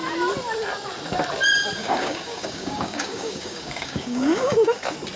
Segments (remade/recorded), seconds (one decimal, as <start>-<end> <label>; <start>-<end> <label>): 0.0-1.8 recorded; 1.8-4.8 remade; 4.8-5.2 recorded